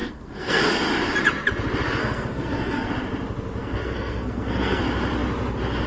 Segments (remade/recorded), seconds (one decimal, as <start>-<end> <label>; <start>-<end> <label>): 0.0-0.6 remade; 0.6-2.0 recorded; 2.0-2.9 remade; 2.9-3.6 recorded; 3.6-4.8 remade; 4.8-5.9 recorded